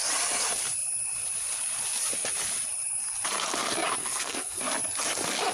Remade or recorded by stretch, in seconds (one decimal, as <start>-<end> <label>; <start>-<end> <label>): 0.0-4.0 recorded; 4.0-4.6 remade; 4.6-5.5 recorded